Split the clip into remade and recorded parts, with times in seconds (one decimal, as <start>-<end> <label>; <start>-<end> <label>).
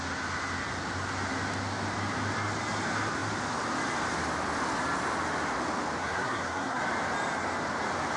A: 0.0-6.0 recorded; 6.0-6.8 remade; 6.8-8.2 recorded